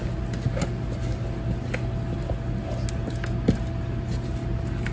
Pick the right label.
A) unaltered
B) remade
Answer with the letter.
A